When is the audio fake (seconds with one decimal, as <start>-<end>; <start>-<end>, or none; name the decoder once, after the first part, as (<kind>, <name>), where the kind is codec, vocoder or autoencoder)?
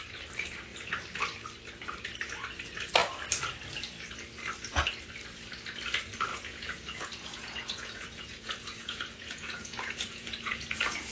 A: 6.3-11.1 (vocoder, Vocos)